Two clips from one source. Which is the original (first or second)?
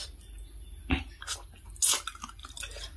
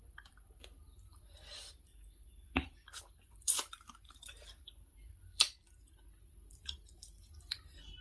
first